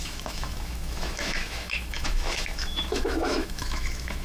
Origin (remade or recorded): remade